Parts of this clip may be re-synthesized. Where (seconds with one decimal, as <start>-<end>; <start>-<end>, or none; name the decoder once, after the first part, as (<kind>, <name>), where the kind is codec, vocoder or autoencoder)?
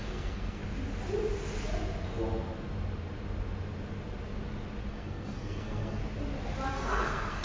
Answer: 0.0-0.6 (codec, SNAC); 4.9-6.0; 6.7-7.4